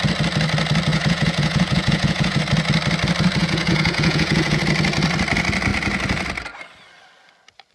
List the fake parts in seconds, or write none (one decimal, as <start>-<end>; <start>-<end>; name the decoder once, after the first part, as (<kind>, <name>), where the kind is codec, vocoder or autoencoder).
0.9-2.4 (vocoder, Vocos); 3.4-4.6